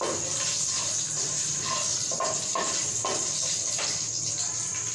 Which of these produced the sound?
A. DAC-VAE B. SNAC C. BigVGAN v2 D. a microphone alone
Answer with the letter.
D